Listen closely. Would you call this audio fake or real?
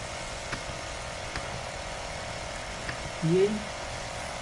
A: fake